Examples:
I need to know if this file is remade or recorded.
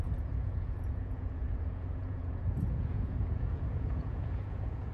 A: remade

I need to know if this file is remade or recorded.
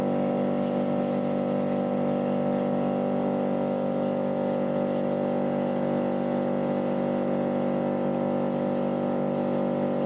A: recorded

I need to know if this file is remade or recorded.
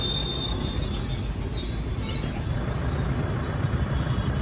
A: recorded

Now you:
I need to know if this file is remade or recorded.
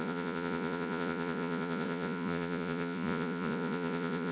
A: remade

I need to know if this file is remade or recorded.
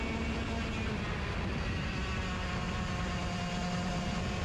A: recorded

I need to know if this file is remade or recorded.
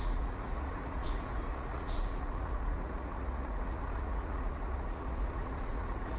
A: remade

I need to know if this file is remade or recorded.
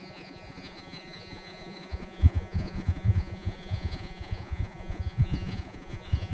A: remade